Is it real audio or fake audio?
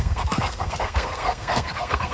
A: fake